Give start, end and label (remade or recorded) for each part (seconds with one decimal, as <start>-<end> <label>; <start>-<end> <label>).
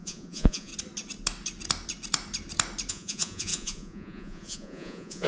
0.0-0.7 remade; 0.7-2.9 recorded; 2.9-5.3 remade